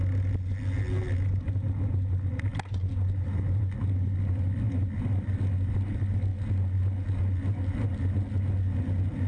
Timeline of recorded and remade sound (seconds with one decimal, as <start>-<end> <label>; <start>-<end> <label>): 0.0-9.3 recorded